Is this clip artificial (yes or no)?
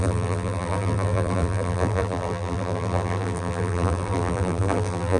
yes